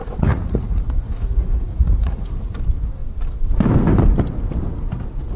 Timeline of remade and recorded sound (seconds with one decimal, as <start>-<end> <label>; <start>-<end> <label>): 0.0-2.6 remade; 2.6-5.4 recorded